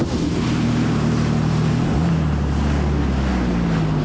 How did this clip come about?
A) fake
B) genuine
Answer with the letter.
B